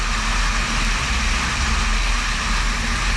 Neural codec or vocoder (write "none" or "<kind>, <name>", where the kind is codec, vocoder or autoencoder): none